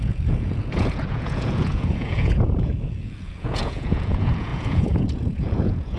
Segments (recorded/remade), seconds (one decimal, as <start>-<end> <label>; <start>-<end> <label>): 0.0-6.0 remade